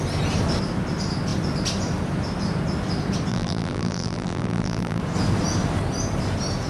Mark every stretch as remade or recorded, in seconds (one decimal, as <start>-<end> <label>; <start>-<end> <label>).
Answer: 0.0-3.3 recorded; 3.3-5.0 remade; 5.0-6.7 recorded